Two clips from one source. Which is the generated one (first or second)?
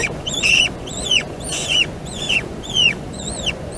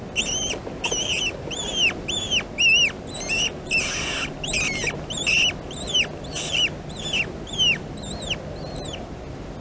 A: first